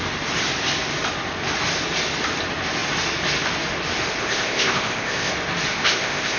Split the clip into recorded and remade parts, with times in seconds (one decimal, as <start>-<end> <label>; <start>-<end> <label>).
0.0-4.2 recorded; 4.2-5.3 remade; 5.3-5.7 recorded; 5.7-6.4 remade